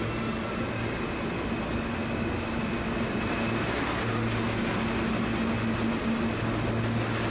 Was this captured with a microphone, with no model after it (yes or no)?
yes